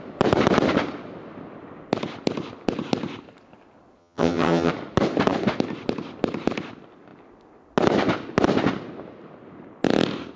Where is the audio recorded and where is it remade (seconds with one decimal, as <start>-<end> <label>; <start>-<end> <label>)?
0.0-4.0 recorded; 4.0-4.7 remade; 4.7-10.4 recorded